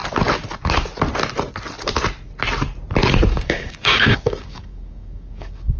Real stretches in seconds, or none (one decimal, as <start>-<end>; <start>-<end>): 0.0-3.3